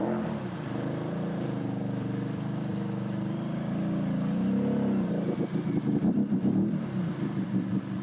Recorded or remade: remade